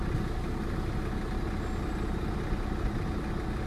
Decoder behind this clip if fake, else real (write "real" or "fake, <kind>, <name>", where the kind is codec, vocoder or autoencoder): real